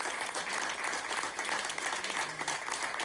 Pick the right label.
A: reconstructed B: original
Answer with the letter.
B